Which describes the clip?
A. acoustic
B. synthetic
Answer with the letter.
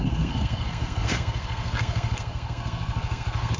B